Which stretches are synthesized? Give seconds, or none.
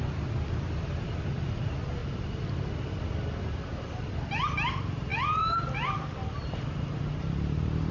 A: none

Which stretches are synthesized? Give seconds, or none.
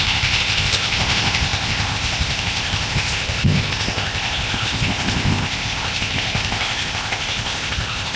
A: 0.0-8.2 (codec, ZipCodec)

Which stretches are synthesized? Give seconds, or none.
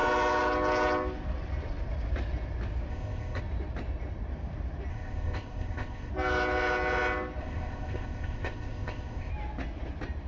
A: 2.9-3.4 (codec, ZipCodec); 4.9-6.1; 7.4-9.3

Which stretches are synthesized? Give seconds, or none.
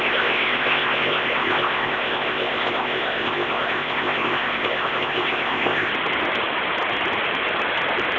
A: 0.0-5.9 (codec, ZipCodec)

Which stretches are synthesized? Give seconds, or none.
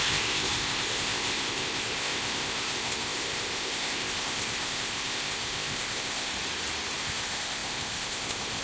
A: 0.0-6.3 (codec, ZipCodec); 7.0-8.6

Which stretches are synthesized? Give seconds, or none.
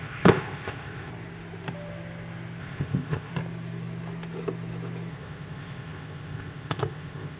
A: 0.0-1.1 (codec, ZipCodec); 2.6-3.3; 5.1-7.4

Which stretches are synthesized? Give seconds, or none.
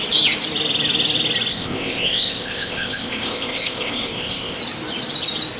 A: 1.5-4.6 (codec, ZipCodec)